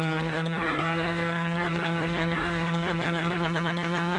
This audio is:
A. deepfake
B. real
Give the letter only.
A